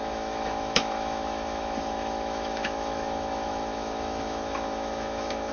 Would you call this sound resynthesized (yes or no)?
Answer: yes